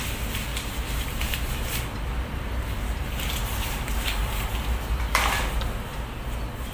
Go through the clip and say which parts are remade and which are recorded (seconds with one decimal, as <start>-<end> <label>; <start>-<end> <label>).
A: 0.0-0.5 recorded; 0.5-4.5 remade; 4.5-6.7 recorded